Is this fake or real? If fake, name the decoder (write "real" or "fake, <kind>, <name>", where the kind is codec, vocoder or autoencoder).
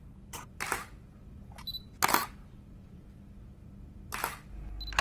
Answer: real